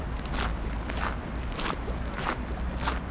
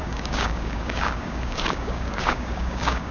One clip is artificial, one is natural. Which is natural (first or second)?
first